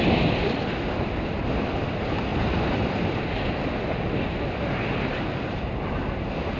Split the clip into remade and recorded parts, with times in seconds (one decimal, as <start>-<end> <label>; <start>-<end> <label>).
0.0-6.6 recorded